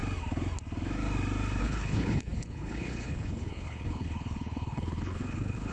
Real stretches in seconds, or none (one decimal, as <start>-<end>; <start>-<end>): 0.0-1.6